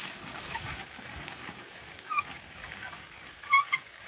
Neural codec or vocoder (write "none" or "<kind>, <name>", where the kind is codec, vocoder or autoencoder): codec, DAC